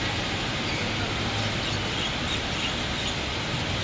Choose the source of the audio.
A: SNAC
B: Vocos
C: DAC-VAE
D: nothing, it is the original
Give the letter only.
D